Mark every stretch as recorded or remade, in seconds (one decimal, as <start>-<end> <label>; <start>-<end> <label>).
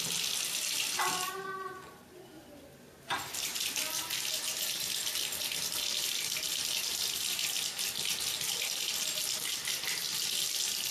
0.0-10.9 recorded